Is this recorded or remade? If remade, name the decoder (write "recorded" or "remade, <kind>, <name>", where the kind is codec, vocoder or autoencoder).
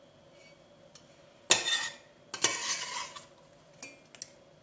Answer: recorded